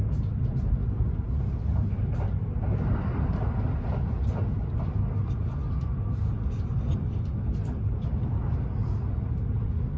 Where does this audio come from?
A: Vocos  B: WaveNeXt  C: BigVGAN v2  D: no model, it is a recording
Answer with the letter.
D